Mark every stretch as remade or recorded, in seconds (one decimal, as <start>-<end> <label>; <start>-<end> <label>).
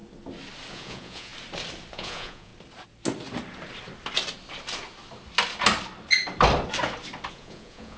0.0-0.7 recorded; 0.7-1.3 remade; 1.3-1.9 recorded; 1.9-2.5 remade; 2.5-7.3 recorded; 7.3-8.0 remade